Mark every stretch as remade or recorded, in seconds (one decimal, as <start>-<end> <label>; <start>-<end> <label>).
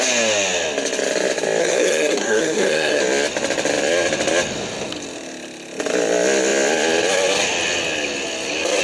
0.0-1.6 recorded; 1.6-3.0 remade; 3.0-8.8 recorded